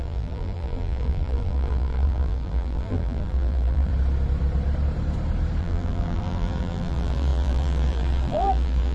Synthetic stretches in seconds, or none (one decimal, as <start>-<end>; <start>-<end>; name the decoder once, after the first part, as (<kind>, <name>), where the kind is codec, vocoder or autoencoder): 0.0-3.9 (vocoder, BigVGAN v2); 5.6-8.9